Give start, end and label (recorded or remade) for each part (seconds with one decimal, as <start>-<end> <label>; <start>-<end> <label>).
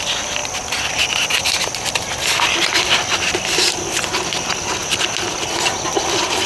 0.0-6.5 recorded